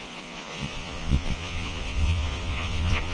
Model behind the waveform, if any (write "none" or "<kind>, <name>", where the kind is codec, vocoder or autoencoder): vocoder, Vocos